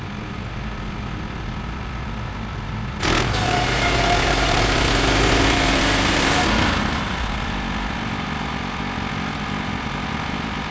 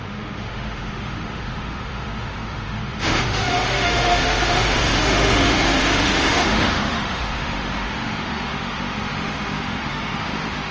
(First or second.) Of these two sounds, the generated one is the second